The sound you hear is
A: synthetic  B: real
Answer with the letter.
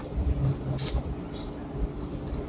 B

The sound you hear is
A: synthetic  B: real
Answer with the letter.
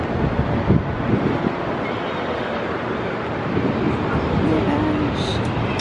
B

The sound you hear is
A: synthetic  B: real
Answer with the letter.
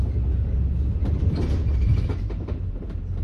B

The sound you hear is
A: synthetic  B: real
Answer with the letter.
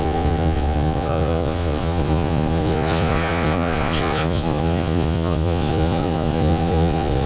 A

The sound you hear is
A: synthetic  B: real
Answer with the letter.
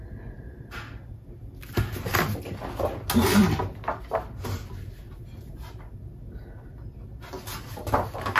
B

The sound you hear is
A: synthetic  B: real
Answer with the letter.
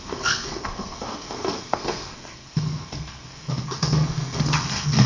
A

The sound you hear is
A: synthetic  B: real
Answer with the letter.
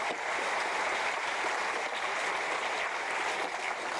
B